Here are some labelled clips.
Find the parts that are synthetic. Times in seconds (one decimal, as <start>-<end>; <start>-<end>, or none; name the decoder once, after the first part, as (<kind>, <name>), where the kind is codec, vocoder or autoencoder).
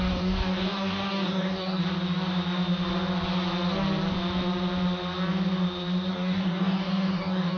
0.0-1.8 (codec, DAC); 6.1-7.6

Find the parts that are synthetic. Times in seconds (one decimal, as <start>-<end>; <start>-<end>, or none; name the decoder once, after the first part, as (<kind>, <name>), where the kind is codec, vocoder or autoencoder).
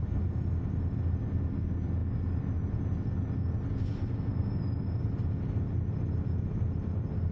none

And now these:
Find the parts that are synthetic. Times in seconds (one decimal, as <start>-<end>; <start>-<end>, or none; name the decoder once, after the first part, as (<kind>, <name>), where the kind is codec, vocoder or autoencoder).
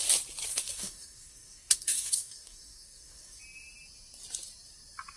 0.5-3.4 (codec, DAC)